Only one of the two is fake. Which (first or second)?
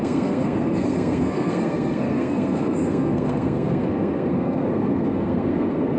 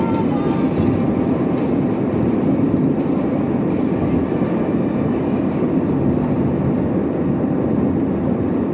first